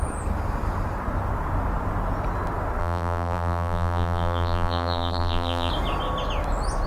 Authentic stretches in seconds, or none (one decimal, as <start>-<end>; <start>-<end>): 0.0-2.8; 5.7-6.9